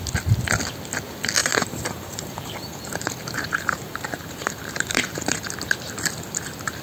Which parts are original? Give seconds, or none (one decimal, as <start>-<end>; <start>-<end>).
0.0-1.4; 5.5-6.8